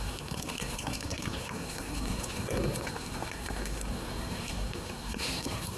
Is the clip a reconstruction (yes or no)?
yes